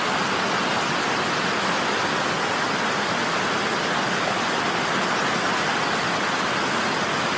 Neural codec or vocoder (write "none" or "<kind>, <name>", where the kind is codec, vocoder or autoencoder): none